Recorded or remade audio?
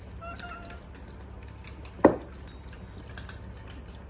recorded